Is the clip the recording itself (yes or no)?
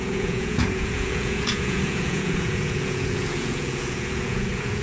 no